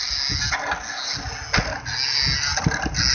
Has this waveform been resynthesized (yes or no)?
no